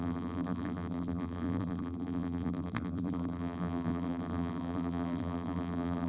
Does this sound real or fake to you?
fake